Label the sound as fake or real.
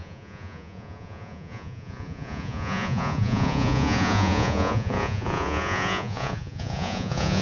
fake